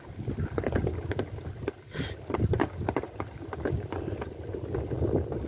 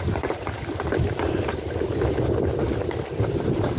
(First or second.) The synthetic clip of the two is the second